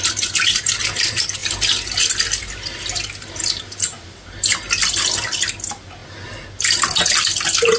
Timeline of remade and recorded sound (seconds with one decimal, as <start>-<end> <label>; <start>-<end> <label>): 0.0-7.8 recorded